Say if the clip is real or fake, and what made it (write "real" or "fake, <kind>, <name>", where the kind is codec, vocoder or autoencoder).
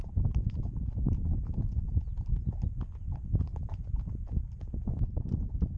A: real